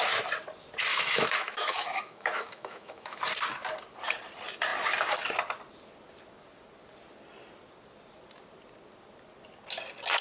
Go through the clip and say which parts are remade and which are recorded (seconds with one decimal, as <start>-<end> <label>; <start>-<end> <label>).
0.0-0.9 recorded; 0.9-3.2 remade; 3.2-10.2 recorded